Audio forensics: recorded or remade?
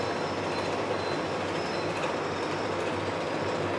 recorded